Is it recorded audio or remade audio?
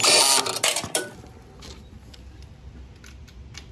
recorded